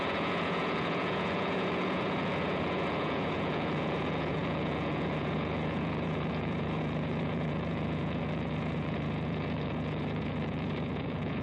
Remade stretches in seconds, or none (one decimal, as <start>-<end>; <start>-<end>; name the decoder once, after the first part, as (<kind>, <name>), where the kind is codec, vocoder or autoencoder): 0.0-11.4 (vocoder, Vocos)